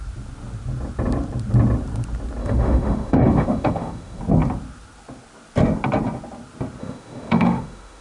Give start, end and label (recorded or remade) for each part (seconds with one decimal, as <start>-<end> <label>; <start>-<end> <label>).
0.0-2.4 recorded; 2.4-4.2 remade; 4.2-6.8 recorded; 6.8-8.0 remade

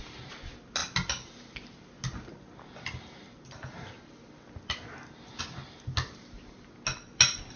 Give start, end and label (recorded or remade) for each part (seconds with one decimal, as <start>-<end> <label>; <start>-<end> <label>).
0.0-7.6 recorded